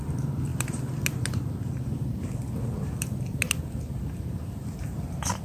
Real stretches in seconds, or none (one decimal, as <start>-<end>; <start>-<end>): 0.5-1.8; 3.4-4.3